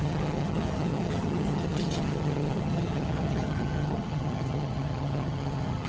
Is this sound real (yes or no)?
no